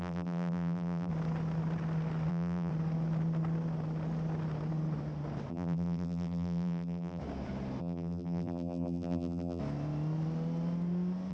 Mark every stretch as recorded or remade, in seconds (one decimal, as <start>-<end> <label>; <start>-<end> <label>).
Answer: 0.0-1.1 remade; 1.1-2.3 recorded; 2.3-2.7 remade; 2.7-5.5 recorded; 5.5-7.2 remade; 7.2-7.8 recorded; 7.8-9.6 remade; 9.6-11.3 recorded